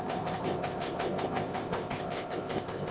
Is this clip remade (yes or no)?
yes